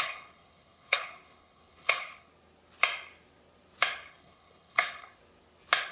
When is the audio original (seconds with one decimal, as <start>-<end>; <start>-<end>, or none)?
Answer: 2.3-4.1; 5.2-5.9